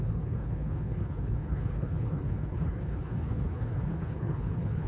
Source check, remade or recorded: remade